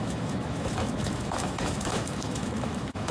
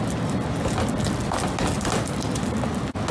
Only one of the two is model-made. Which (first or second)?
first